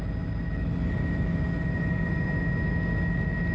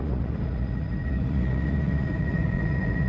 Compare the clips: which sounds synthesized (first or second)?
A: second